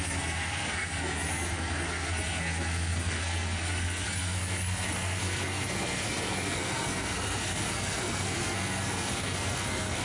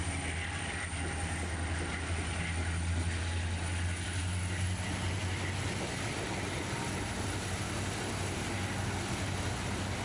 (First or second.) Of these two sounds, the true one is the second